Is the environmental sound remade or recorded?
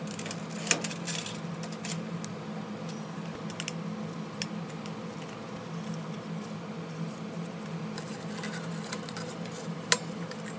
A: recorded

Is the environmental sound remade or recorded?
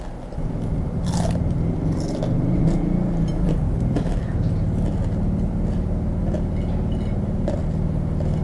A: recorded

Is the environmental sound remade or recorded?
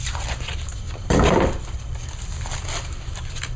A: recorded